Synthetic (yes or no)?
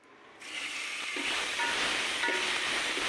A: no